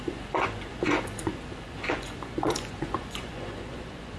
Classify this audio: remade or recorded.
remade